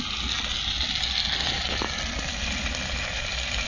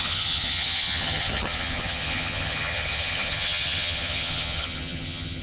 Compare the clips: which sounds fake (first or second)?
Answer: second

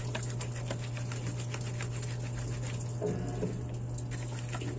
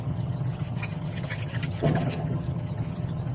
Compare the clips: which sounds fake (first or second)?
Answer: second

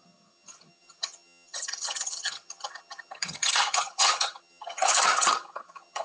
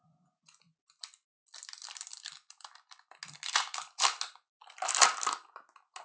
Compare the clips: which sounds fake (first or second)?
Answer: first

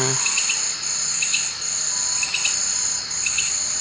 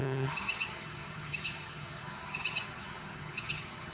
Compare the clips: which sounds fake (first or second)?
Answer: second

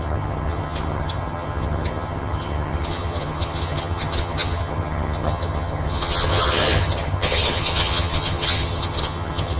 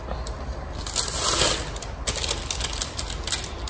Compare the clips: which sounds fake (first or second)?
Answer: first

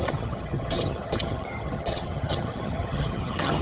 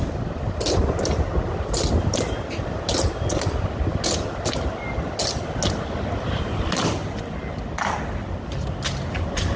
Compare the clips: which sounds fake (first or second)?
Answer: first